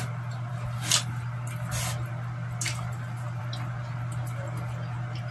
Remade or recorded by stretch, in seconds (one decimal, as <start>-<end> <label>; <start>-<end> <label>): 0.0-5.3 recorded